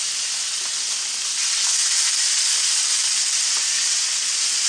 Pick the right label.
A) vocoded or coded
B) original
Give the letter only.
B